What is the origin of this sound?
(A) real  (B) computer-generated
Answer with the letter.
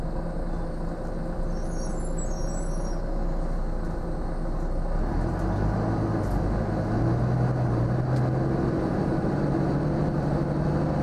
A